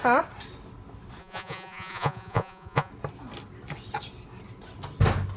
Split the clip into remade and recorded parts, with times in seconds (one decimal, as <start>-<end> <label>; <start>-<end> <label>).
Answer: 0.0-1.2 recorded; 1.2-2.9 remade; 2.9-5.4 recorded